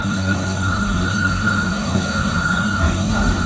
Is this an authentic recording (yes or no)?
no